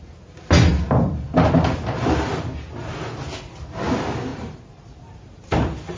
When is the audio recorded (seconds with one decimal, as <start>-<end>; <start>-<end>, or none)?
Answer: 0.0-4.3; 5.2-6.0